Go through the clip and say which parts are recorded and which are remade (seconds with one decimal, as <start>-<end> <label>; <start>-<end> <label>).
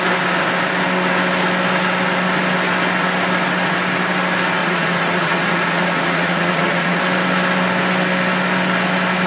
0.0-4.6 recorded; 4.6-7.0 remade; 7.0-9.3 recorded